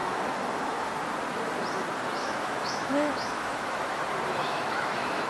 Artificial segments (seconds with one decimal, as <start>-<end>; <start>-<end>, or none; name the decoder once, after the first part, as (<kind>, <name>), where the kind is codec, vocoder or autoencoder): 0.0-0.9 (autoencoder, DAC-VAE); 2.2-4.0; 4.4-5.3